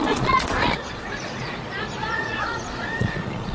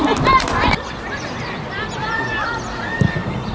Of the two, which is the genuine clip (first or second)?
second